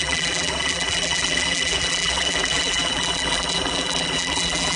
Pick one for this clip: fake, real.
fake